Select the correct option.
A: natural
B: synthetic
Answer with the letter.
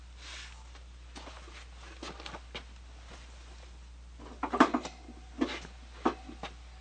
A